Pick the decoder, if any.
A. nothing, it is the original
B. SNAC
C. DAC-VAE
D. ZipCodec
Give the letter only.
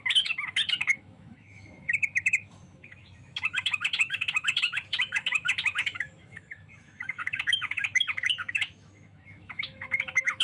C